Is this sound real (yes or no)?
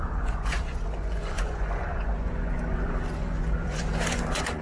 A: no